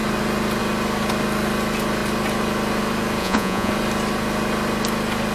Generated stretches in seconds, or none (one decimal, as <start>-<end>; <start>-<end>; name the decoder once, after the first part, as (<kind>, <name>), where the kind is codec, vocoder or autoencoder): 3.2-3.7 (vocoder, Vocos)